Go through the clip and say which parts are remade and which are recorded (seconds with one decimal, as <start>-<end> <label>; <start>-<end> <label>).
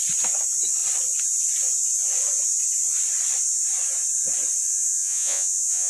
0.0-4.7 recorded; 4.7-5.9 remade